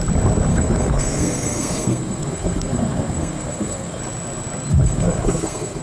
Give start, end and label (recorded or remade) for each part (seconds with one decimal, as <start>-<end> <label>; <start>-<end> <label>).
0.0-0.5 recorded; 0.5-4.0 remade; 4.0-4.7 recorded; 4.7-5.8 remade